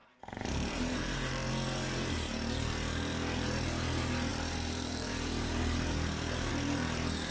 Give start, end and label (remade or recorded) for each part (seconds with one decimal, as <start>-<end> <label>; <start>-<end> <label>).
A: 0.0-1.5 remade; 1.5-4.3 recorded; 4.3-6.5 remade; 6.5-7.3 recorded